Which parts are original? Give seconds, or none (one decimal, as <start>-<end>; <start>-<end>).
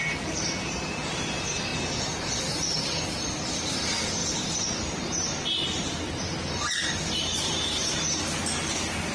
0.0-4.2; 8.2-9.1